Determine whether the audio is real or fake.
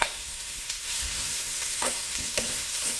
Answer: fake